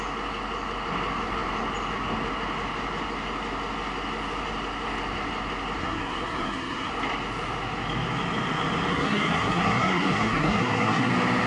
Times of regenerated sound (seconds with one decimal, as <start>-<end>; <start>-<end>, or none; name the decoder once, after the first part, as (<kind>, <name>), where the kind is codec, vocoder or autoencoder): 5.8-6.9 (codec, SNAC); 8.9-11.1

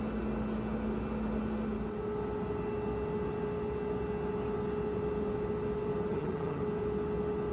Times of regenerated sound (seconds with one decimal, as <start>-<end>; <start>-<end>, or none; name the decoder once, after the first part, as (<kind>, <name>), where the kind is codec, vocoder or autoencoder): 6.1-6.6 (vocoder, HiFi-GAN)

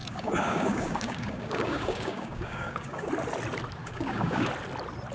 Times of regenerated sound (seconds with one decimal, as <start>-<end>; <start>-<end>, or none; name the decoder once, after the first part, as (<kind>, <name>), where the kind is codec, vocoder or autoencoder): 0.0-3.1 (codec, DAC); 3.8-4.5

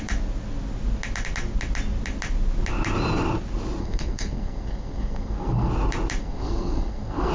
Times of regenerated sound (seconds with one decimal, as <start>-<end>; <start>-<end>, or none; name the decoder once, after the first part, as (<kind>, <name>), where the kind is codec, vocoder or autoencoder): 3.8-5.7 (codec, SNAC); 6.2-7.3